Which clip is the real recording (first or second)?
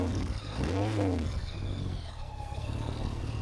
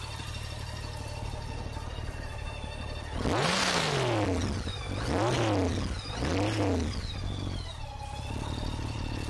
second